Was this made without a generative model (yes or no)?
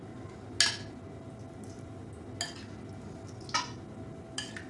yes